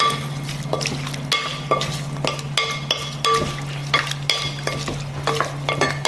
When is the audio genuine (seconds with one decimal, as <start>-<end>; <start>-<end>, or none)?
0.0-6.1